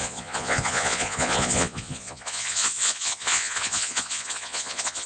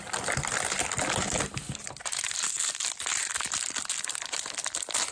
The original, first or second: second